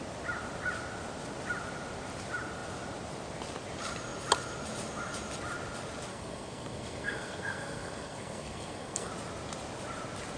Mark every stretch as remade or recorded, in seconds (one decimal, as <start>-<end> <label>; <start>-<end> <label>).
0.0-6.1 recorded; 6.1-9.1 remade; 9.1-10.4 recorded